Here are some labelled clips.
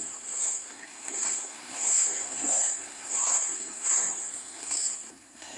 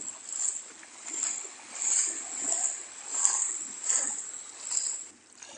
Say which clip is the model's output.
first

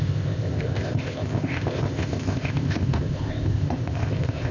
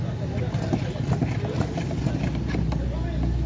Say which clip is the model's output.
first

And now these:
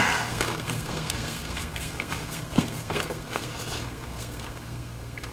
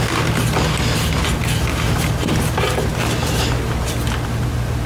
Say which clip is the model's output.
first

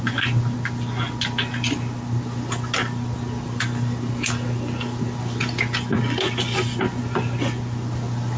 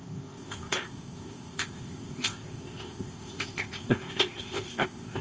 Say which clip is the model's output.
second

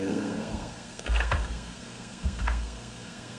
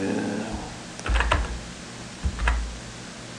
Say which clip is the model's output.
first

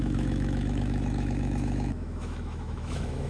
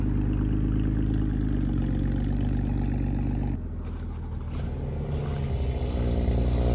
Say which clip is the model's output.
first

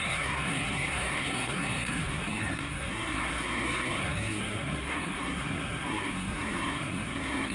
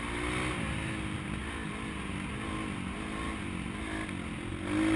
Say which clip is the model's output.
first